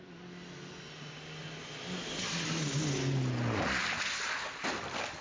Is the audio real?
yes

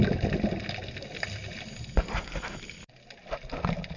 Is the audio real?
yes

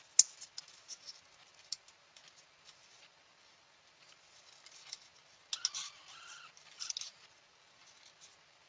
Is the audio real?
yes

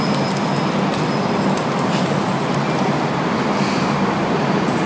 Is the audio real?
yes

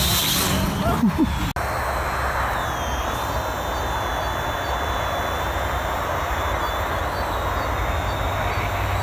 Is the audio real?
yes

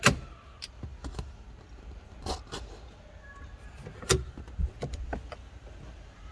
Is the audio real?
yes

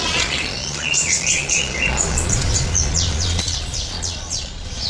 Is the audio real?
no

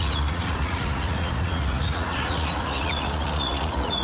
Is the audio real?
no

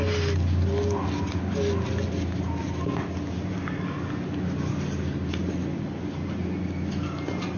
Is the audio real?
yes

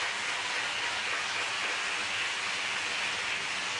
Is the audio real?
yes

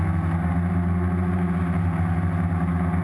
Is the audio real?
yes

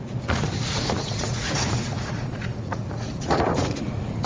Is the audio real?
no